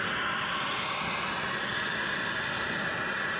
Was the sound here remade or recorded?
recorded